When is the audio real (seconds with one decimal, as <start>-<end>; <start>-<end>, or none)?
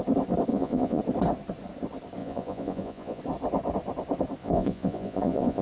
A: 0.0-0.5; 1.0-2.2; 3.2-4.4